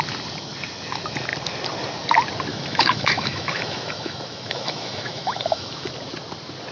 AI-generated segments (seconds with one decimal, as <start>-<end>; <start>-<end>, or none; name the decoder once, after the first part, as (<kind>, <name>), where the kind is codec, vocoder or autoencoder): 2.5-5.9 (autoencoder, DAC-VAE)